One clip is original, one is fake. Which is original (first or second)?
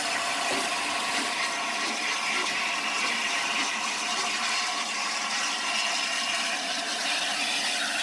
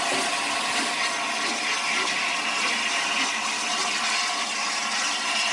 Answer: second